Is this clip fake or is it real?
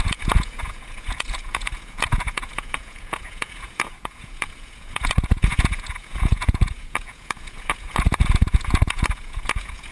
fake